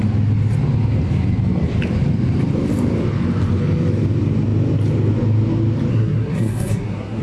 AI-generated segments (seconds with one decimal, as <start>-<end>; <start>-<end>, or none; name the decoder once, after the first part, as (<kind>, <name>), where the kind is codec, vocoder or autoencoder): 5.9-7.2 (codec, SNAC)